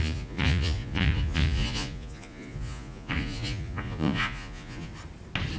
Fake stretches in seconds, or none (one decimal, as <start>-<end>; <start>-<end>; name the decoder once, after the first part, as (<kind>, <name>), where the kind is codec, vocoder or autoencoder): 0.0-4.9 (vocoder, Vocos)